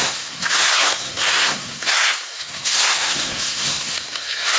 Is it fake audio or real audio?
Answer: fake